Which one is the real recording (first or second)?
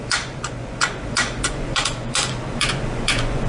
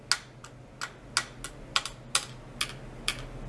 second